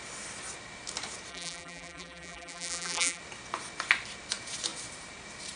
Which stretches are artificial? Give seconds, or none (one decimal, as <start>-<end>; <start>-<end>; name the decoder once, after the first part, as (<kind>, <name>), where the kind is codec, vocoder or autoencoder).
1.3-3.2 (vocoder, BigVGAN v2)